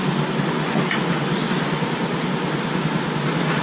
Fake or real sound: real